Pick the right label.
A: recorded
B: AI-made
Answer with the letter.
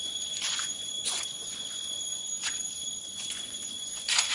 B